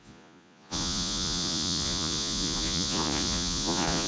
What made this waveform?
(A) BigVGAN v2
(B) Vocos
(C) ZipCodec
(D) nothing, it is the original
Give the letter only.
B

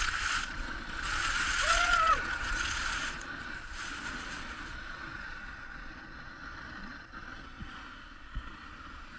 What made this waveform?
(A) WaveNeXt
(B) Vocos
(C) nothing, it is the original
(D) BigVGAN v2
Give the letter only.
B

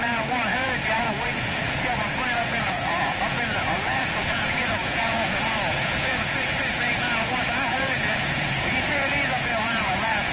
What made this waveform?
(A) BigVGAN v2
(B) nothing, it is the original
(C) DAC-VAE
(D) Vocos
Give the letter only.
D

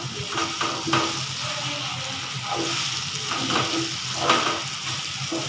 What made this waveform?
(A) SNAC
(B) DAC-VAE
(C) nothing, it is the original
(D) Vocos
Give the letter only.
C